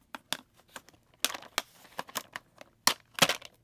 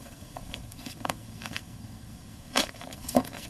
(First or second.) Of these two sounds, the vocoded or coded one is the second